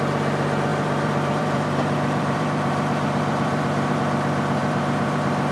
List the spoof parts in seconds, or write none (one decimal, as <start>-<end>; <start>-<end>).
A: 0.7-4.0; 4.6-5.5

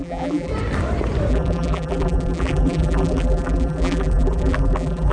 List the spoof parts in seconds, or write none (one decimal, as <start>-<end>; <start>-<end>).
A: 0.0-0.5; 1.3-5.1

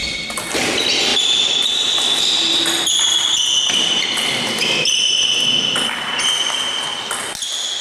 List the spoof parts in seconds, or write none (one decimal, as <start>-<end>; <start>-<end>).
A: none

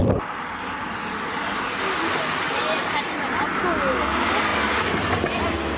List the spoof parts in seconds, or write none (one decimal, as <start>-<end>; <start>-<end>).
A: 0.0-3.5

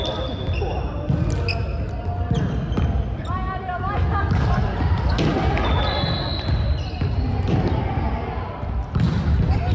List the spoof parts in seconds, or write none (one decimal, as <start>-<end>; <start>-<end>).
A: none